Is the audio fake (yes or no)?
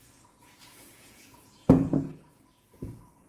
yes